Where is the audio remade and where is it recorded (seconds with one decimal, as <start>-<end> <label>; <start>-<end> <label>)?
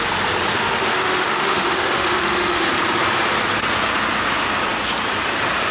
0.0-0.5 recorded; 0.5-2.6 remade; 2.6-5.7 recorded